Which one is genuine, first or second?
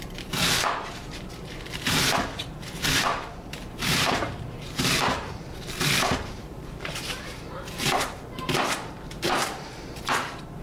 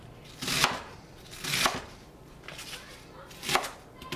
second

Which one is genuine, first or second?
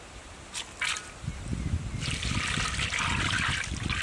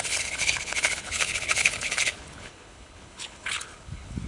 first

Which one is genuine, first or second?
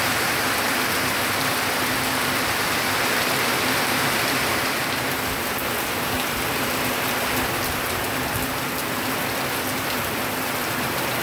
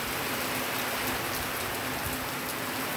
second